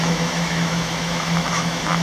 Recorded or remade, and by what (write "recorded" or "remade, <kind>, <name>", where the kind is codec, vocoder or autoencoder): remade, autoencoder, DAC-VAE